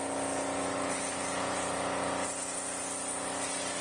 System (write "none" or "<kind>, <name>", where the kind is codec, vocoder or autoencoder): none